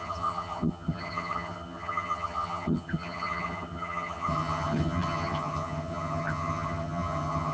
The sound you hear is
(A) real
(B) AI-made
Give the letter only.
B